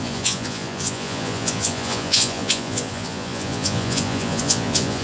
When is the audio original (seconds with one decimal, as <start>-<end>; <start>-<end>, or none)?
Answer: none